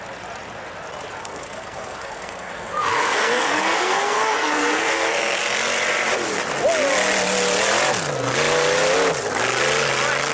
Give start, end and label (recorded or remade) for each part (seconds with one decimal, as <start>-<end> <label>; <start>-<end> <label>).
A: 0.0-1.2 recorded; 1.2-5.4 remade; 5.4-10.3 recorded